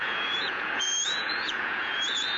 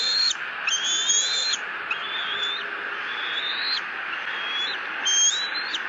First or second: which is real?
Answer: second